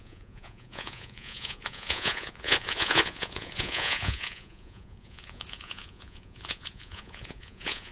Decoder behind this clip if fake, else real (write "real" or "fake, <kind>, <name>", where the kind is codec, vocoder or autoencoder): fake, vocoder, Vocos